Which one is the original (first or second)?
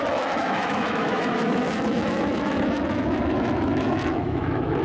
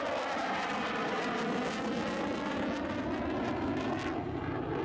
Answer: second